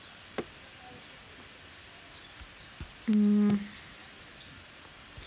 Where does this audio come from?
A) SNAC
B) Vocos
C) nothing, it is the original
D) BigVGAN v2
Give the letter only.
C